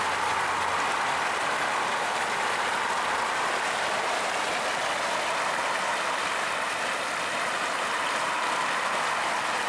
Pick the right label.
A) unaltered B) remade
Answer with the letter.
A